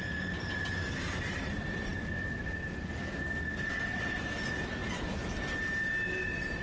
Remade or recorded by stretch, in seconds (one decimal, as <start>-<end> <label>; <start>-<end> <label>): 0.0-6.6 recorded